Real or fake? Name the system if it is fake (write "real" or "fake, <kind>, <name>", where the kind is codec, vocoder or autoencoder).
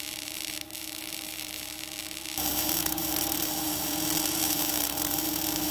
fake, vocoder, BigVGAN v2